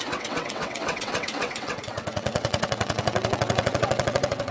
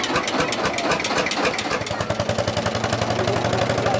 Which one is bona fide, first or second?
second